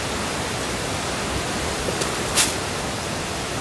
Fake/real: real